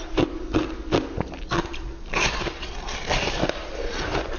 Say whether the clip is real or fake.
real